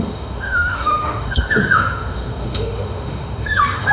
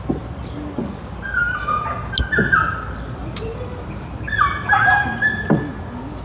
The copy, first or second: first